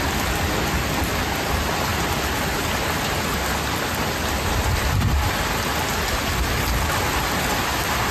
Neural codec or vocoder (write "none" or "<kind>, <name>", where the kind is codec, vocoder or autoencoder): none